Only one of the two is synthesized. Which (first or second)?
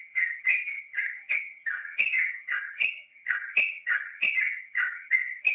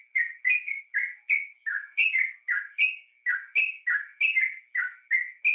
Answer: first